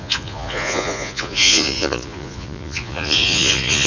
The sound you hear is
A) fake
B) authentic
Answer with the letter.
A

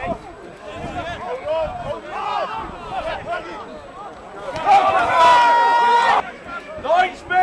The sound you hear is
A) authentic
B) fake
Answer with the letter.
A